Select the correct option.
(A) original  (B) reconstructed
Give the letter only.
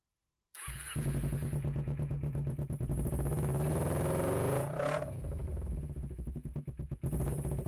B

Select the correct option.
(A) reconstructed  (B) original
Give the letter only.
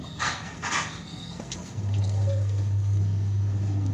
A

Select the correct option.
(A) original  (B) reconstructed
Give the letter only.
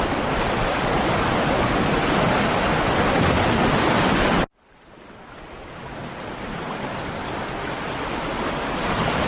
A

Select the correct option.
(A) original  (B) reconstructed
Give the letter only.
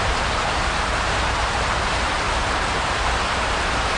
B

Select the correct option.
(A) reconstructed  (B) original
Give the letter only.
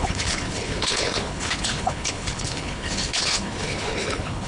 A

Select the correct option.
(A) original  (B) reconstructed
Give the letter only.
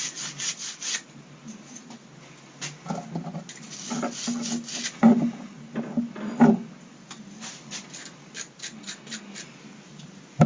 A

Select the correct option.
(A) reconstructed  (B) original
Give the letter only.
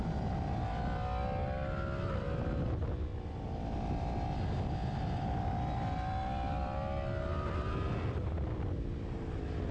B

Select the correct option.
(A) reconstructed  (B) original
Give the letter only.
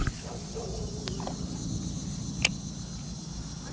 B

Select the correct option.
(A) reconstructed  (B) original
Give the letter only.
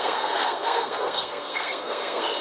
A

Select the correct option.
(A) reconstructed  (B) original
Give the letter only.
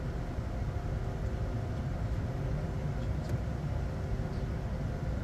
B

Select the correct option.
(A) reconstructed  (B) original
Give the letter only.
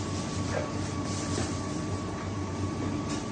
B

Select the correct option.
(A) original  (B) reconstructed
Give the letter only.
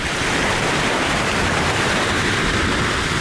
B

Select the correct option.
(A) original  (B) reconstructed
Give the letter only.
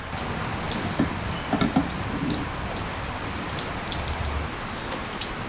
B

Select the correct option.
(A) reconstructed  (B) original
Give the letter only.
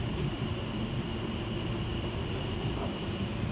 B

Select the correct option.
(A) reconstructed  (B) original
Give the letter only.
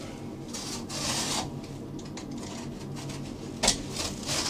B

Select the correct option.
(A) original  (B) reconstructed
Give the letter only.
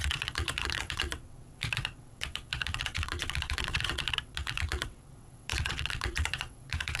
B